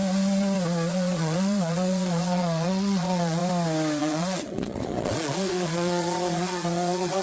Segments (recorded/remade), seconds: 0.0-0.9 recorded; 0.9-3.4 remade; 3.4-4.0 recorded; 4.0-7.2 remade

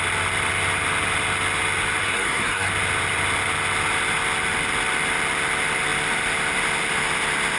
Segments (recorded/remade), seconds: 0.0-2.0 recorded; 2.0-2.7 remade; 2.7-7.6 recorded

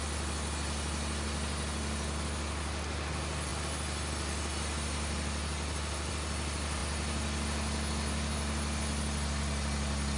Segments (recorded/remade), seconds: 0.0-10.2 recorded

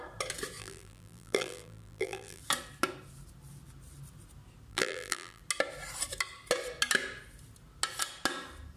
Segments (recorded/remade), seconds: 0.0-0.6 recorded; 0.6-2.4 remade; 2.4-4.7 recorded; 4.7-5.4 remade; 5.4-8.8 recorded

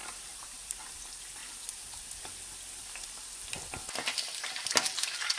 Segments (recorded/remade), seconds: 0.0-0.8 remade; 0.8-5.4 recorded

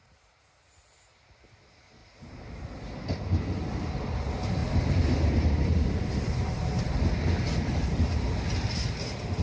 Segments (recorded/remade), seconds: 0.0-2.0 recorded; 2.0-2.5 remade; 2.5-4.6 recorded; 4.6-6.8 remade; 6.8-9.4 recorded